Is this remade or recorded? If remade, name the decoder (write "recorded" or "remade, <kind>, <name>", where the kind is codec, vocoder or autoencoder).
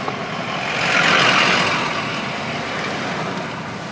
recorded